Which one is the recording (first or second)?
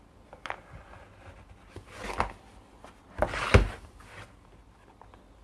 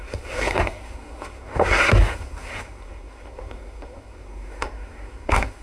first